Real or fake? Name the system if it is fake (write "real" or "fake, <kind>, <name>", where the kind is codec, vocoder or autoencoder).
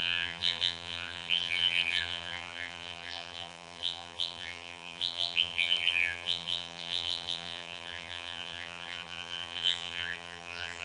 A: fake, vocoder, BigVGAN v2